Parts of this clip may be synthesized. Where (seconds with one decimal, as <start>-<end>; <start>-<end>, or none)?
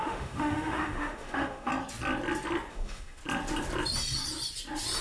0.0-1.7; 2.7-3.2